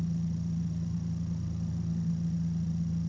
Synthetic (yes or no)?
no